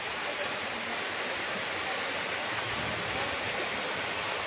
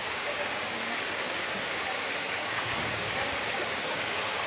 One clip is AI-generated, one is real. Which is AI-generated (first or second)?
second